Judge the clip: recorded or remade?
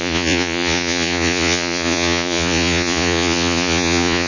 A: remade